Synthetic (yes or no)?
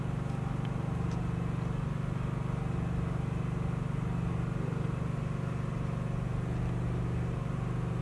no